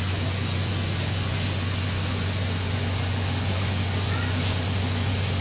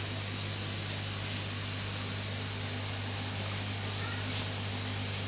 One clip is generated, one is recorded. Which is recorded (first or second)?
second